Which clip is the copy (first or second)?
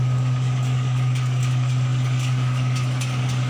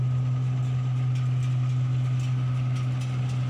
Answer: first